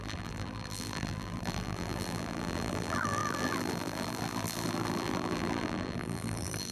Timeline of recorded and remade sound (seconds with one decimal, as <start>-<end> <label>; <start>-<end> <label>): 0.0-6.7 remade